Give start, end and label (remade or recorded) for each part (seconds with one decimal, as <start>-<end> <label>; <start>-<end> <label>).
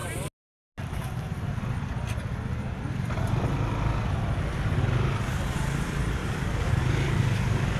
0.0-6.2 recorded; 6.2-7.8 remade